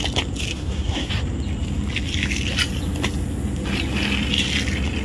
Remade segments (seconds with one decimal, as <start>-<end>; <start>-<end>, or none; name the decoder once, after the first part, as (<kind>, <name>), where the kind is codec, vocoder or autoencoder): 0.5-1.1 (codec, SNAC)